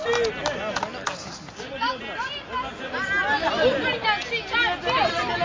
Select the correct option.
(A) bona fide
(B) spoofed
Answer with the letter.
A